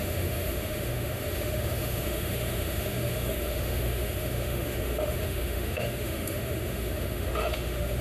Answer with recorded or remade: remade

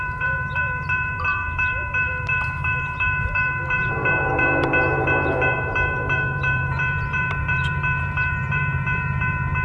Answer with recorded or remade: remade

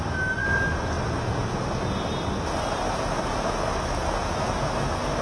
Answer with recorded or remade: recorded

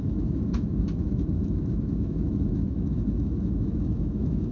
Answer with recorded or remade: remade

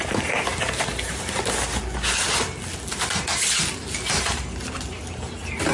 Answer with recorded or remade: recorded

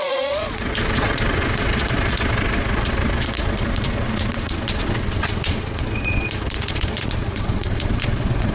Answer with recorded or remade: remade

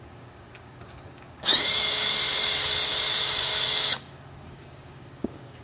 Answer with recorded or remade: remade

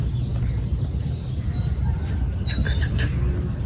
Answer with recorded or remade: recorded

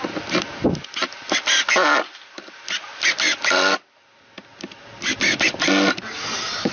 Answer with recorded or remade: recorded